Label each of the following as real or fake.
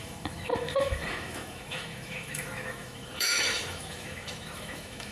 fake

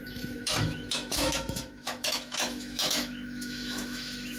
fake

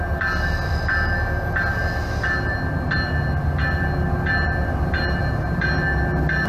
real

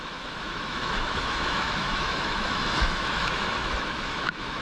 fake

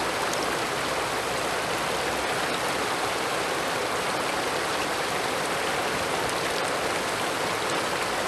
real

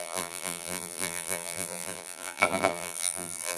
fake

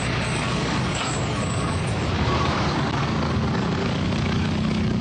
fake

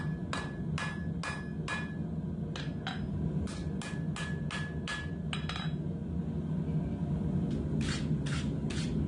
real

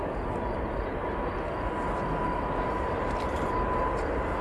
real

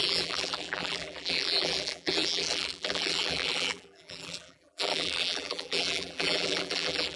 fake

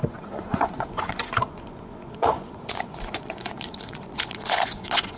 fake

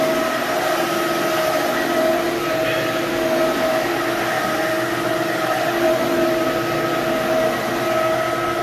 real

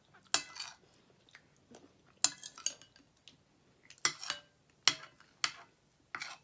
real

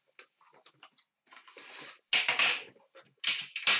real